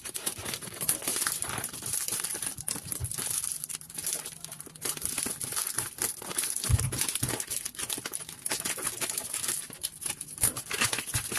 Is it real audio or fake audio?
real